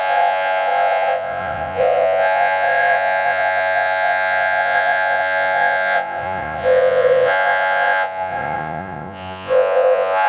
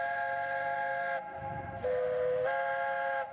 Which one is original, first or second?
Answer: second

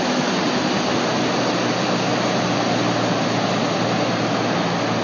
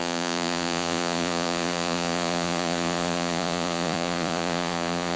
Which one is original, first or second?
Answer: first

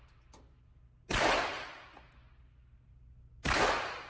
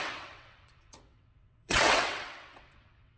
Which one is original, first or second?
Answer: first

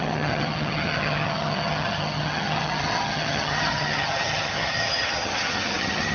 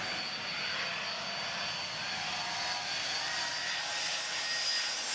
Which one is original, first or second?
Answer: second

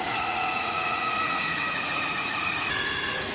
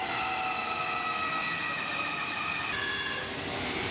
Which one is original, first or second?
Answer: second